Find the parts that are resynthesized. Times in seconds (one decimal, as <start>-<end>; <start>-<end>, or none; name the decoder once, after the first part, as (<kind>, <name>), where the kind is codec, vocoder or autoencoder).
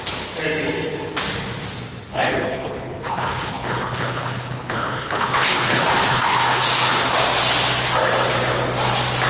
2.1-6.6 (codec, HILCodec)